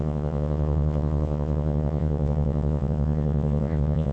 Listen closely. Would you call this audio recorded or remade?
remade